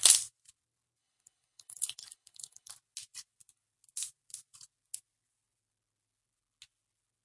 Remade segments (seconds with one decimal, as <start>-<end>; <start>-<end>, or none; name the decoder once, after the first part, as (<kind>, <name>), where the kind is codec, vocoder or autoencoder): 1.0-2.7 (codec, HILCodec)